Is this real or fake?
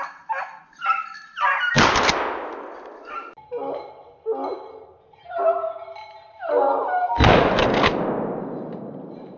real